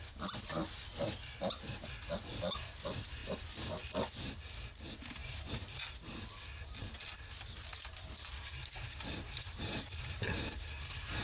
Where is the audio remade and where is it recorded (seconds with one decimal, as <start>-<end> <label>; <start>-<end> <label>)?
0.0-5.2 recorded; 5.2-5.8 remade; 5.8-8.9 recorded; 8.9-10.3 remade; 10.3-11.2 recorded